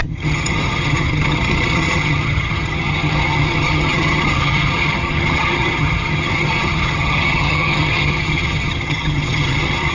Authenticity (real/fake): fake